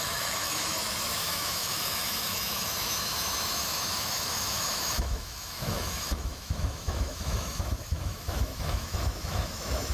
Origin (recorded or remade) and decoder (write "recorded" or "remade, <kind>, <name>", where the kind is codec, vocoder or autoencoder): remade, autoencoder, DAC-VAE